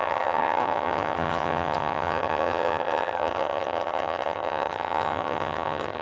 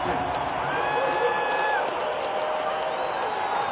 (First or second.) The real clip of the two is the second